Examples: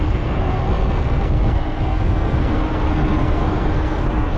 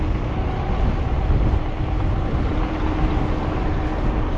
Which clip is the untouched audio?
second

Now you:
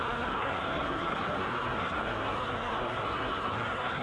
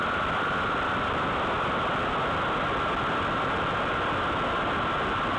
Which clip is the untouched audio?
second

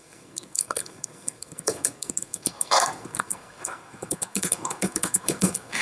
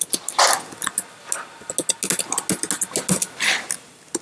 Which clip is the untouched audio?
second